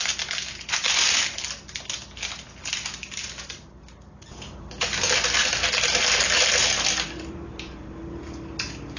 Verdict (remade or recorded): recorded